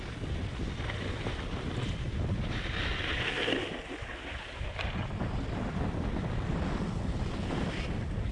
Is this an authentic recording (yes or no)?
yes